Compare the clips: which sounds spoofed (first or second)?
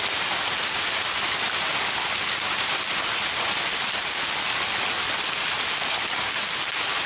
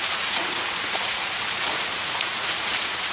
second